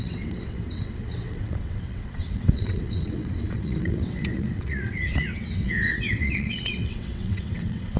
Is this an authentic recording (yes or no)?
no